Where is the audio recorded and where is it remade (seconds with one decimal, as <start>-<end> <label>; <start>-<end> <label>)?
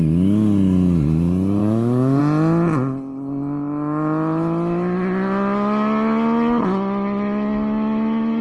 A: 0.0-1.6 recorded; 1.6-2.2 remade; 2.2-8.4 recorded